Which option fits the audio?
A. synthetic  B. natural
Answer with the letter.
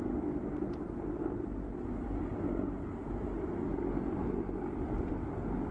B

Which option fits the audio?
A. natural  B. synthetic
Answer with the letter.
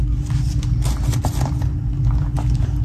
A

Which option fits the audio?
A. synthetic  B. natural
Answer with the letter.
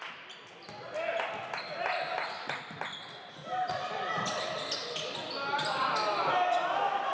B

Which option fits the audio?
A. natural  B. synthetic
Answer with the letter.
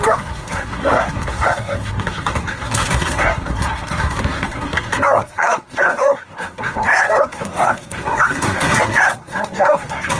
B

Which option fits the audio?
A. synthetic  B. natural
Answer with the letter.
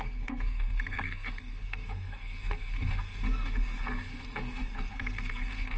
A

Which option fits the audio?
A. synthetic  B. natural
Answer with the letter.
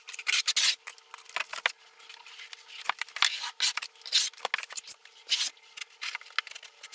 B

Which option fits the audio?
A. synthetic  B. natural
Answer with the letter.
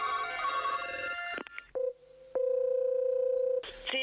B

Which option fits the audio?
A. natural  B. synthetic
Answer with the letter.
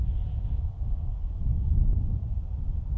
A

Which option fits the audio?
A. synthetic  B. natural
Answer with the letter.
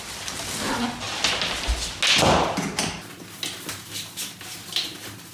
B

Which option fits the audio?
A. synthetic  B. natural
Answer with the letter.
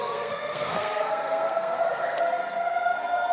A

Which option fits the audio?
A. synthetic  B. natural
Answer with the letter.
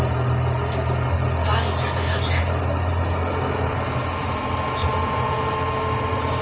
B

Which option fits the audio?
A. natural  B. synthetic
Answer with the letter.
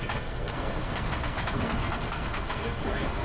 B